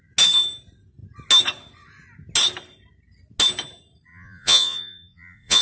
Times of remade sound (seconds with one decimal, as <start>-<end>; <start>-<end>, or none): 4.1-5.6